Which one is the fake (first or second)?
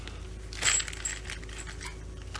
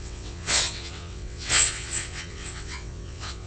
second